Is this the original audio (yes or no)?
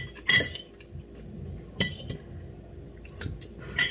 yes